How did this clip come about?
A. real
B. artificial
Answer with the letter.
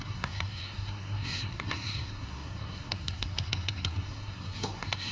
B